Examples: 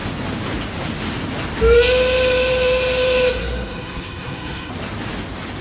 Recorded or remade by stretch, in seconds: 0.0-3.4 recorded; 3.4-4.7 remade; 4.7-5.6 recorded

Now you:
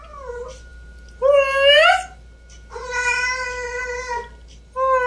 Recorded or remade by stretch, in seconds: 0.0-5.1 recorded

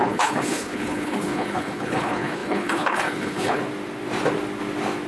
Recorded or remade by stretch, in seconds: 0.0-3.6 remade; 3.6-5.1 recorded

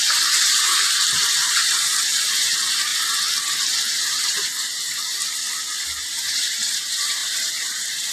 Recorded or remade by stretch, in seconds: 0.0-2.9 remade; 2.9-4.1 recorded; 4.1-4.5 remade; 4.5-6.1 recorded; 6.1-8.1 remade